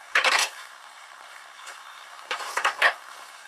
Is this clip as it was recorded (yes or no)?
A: no